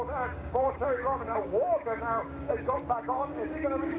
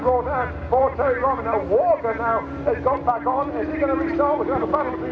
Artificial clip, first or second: first